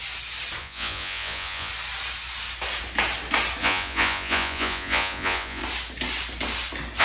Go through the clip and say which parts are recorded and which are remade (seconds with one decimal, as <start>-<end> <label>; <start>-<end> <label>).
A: 0.0-0.6 recorded; 0.6-1.7 remade; 1.7-3.6 recorded; 3.6-5.6 remade; 5.6-7.0 recorded